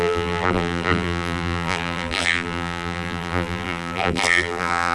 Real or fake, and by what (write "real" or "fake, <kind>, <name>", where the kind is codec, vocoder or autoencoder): fake, vocoder, BigVGAN v2